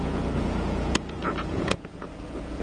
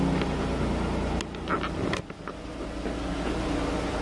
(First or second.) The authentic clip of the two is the second